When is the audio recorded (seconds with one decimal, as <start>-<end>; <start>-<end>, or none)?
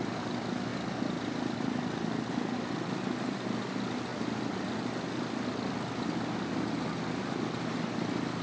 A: 0.0-8.4